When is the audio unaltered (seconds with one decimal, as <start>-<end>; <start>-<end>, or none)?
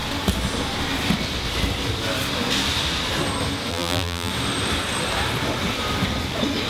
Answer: 0.0-3.7; 4.3-6.7